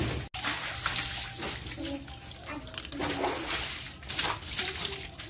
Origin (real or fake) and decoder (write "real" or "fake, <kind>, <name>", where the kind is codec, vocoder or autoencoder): real